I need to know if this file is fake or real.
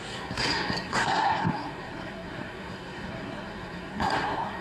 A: fake